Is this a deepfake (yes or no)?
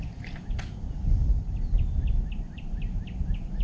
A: no